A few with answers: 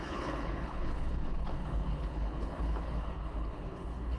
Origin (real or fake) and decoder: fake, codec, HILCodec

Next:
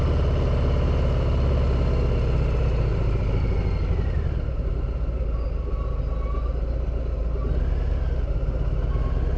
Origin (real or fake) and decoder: real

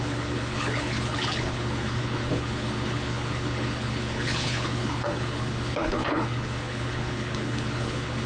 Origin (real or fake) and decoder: fake, codec, HILCodec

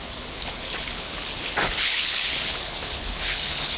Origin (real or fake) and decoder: fake, codec, HILCodec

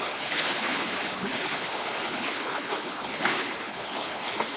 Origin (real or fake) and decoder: fake, codec, HILCodec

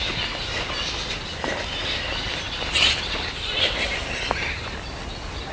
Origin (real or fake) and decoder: real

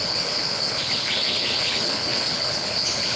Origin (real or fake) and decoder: fake, codec, HILCodec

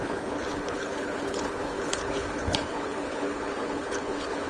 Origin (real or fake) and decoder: fake, codec, HILCodec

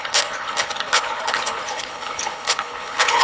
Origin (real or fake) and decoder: fake, codec, HILCodec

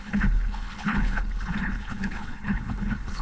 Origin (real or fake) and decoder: fake, codec, HILCodec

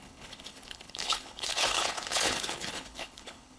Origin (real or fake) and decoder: fake, codec, HILCodec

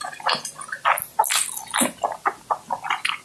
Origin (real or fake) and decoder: real